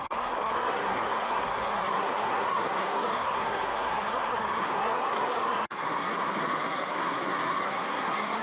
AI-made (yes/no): yes